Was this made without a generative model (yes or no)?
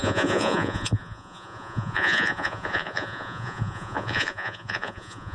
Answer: no